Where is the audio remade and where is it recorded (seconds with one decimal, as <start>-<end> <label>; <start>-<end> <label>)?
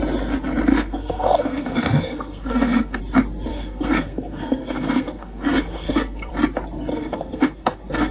0.0-0.7 recorded; 0.7-3.0 remade; 3.0-3.5 recorded; 3.5-6.3 remade; 6.3-6.9 recorded; 6.9-8.1 remade